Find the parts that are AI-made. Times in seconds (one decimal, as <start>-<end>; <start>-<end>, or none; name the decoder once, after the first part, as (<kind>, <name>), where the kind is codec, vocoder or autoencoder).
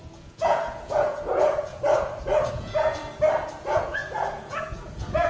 0.0-1.7 (vocoder, Vocos); 2.5-3.0; 3.6-5.3